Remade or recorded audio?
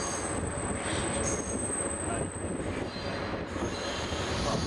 recorded